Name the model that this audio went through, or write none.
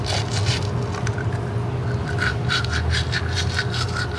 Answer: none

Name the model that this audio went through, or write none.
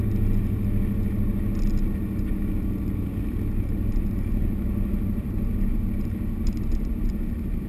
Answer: none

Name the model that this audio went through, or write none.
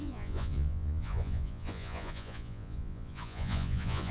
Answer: vocoder, Vocos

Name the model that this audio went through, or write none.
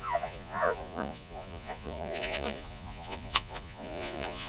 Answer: vocoder, Vocos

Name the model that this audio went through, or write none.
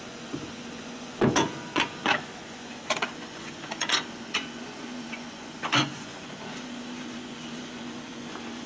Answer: vocoder, Vocos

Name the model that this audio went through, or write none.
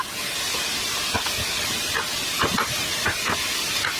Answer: none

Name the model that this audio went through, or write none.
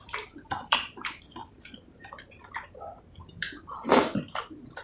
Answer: vocoder, BigVGAN v2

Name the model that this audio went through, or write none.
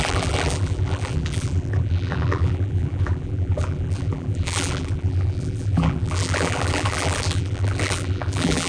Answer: vocoder, BigVGAN v2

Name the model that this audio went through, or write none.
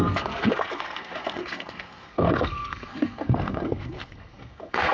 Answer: codec, SNAC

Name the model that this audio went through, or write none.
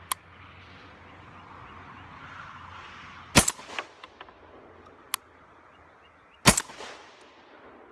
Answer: none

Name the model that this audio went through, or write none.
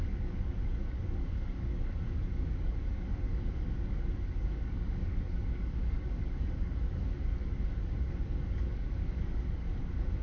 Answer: codec, DAC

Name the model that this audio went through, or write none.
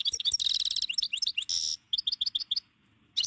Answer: none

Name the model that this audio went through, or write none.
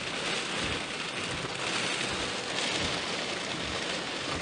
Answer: none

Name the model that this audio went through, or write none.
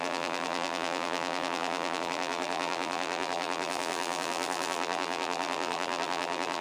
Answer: vocoder, BigVGAN v2